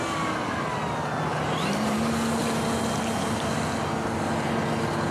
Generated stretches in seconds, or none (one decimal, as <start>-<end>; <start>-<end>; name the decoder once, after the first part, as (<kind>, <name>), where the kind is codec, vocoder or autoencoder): 1.3-2.0 (vocoder, BigVGAN v2)